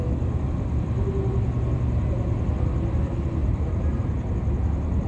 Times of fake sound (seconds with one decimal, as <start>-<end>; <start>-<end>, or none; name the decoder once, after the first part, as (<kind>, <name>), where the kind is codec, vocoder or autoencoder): 3.4-4.1 (vocoder, BigVGAN v2)

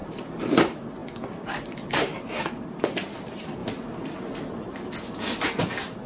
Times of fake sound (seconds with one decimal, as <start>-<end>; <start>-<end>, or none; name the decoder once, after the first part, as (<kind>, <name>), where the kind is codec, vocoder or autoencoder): 0.0-1.0 (vocoder, BigVGAN v2); 2.6-3.6; 5.6-6.1